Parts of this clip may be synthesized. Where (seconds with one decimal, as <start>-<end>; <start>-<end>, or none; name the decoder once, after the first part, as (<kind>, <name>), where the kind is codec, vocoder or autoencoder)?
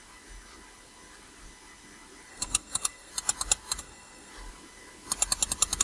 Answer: 2.3-3.1 (codec, SNAC); 3.8-4.3